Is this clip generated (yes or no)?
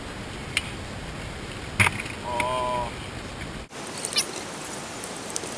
no